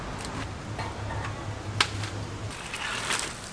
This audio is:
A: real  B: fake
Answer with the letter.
A